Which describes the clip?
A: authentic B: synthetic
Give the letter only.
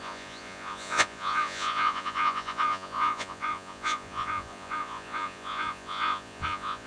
B